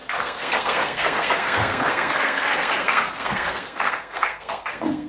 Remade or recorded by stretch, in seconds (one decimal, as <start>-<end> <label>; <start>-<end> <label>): 0.0-5.1 remade